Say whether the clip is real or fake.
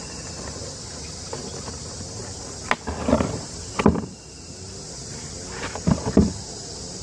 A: real